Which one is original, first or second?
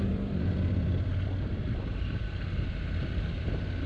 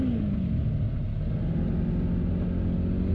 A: second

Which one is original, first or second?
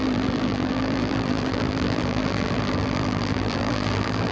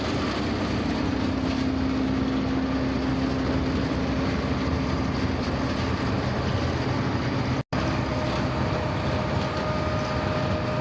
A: second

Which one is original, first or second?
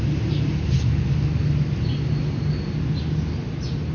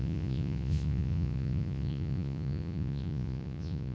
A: first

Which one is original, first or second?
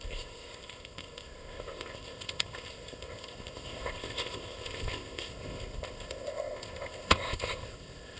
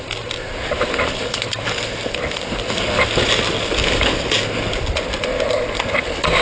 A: second